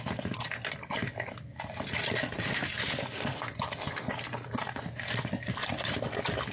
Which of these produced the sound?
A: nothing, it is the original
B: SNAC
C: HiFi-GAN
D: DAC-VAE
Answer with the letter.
A